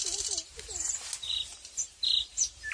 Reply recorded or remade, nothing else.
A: remade